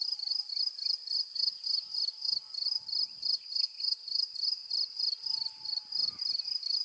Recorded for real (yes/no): yes